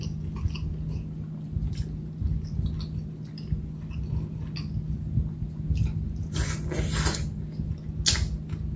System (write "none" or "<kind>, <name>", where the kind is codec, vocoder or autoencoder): none